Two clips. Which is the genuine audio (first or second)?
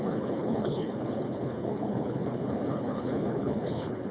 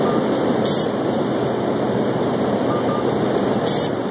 second